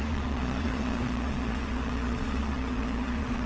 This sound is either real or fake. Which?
fake